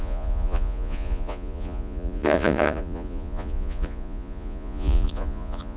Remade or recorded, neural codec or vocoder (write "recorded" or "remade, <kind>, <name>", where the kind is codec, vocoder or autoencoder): remade, vocoder, Vocos